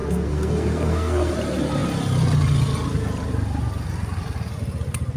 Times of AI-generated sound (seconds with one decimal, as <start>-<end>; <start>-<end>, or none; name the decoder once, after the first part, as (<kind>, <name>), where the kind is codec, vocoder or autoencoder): 0.0-1.3 (codec, SNAC)